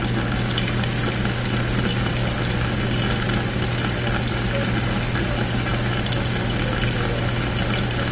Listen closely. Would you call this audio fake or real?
real